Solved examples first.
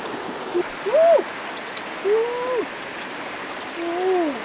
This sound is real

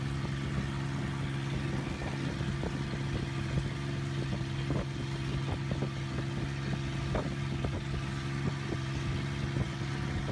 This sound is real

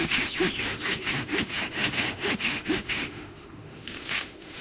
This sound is fake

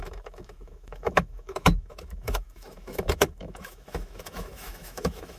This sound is fake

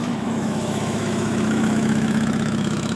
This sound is fake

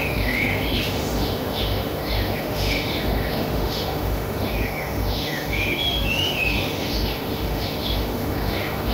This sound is fake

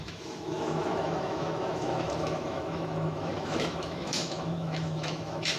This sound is fake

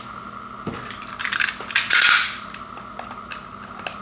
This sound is real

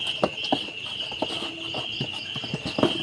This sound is real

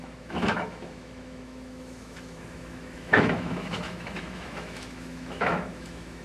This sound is fake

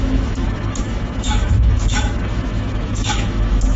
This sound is fake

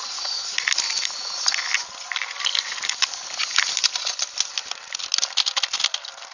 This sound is real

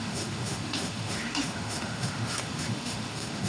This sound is fake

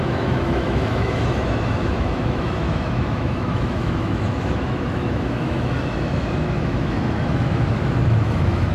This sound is fake